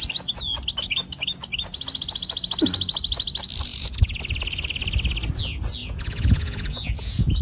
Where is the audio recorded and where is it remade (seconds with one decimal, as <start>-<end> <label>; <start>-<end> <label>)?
0.0-3.7 recorded; 3.7-4.2 remade; 4.2-5.8 recorded; 5.8-7.4 remade